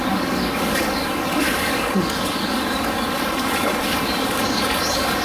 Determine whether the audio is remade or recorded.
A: remade